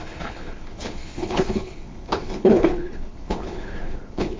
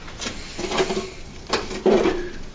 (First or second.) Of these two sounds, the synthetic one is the first